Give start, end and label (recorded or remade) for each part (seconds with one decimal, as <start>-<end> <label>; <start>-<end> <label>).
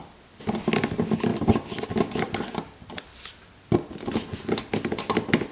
0.0-5.5 recorded